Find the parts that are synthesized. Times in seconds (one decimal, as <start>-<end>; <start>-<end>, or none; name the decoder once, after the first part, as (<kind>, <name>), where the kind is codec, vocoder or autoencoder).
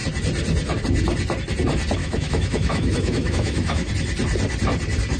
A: 2.0-3.9 (autoencoder, DAC-VAE)